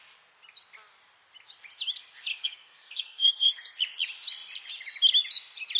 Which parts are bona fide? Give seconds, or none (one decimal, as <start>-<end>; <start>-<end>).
0.0-2.3; 3.6-5.8